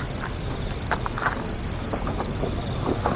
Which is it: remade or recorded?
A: recorded